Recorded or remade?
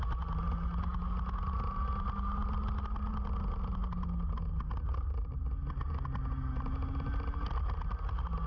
recorded